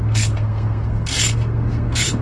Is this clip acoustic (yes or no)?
no